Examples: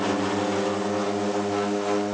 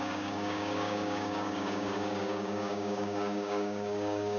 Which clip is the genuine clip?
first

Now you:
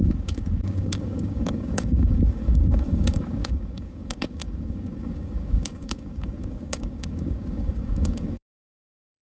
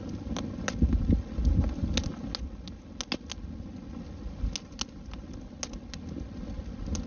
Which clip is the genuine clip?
second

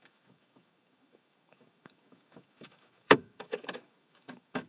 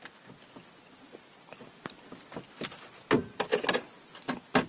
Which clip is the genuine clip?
second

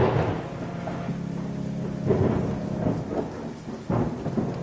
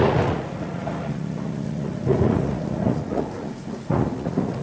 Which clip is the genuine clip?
first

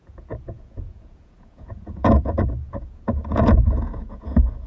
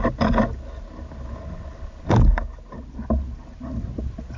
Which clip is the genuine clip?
second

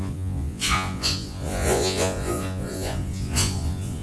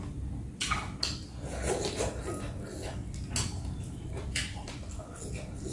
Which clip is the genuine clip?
second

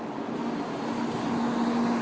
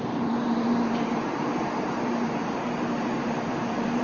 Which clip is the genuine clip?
first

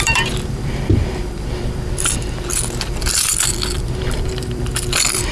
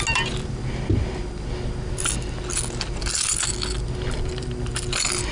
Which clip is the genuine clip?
second